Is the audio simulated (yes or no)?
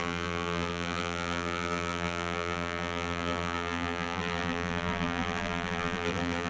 yes